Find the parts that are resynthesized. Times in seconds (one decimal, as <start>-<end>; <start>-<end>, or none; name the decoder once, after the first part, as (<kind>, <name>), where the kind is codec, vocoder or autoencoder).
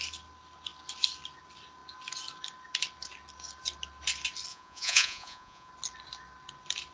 4.5-5.7 (vocoder, Vocos)